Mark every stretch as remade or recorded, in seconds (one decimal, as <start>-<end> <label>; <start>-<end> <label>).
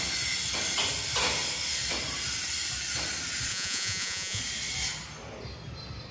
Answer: 0.0-3.5 recorded; 3.5-4.4 remade; 4.4-6.1 recorded